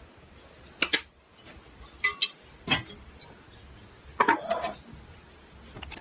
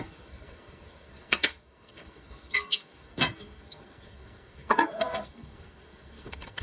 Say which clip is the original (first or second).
first